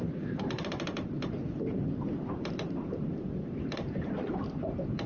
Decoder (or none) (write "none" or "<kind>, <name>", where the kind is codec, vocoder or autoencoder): vocoder, BigVGAN v2